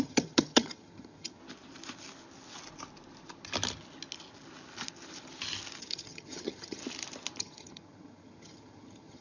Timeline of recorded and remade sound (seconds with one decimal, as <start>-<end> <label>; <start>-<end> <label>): 0.0-1.4 remade; 1.4-5.8 recorded; 5.8-6.8 remade; 6.8-7.4 recorded; 7.4-9.2 remade